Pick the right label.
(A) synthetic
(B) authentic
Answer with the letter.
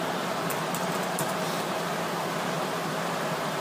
B